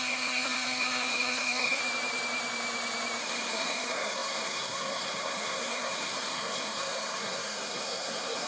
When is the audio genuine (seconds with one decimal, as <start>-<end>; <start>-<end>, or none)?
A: 1.8-3.2